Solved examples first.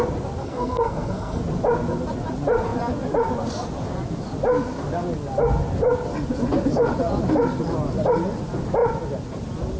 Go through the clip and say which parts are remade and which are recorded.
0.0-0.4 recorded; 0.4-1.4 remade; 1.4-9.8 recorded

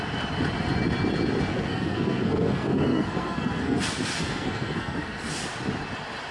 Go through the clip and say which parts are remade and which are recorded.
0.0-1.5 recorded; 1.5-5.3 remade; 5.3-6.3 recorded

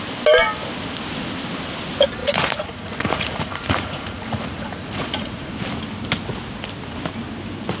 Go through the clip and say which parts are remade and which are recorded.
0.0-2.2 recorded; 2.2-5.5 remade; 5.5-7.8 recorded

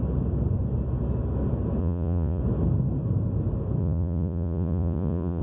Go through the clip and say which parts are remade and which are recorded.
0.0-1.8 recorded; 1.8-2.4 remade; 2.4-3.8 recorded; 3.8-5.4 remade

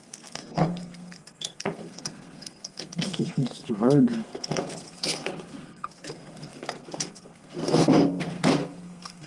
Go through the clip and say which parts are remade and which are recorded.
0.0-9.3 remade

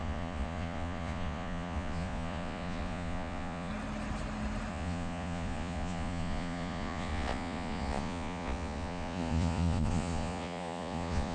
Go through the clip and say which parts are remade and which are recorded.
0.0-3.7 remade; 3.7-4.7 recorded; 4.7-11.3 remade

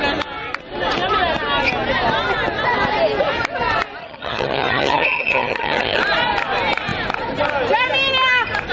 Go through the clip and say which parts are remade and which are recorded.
0.0-4.0 recorded; 4.0-6.0 remade; 6.0-8.7 recorded